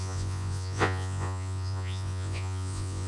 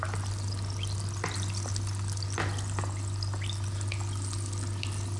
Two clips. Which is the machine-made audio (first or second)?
first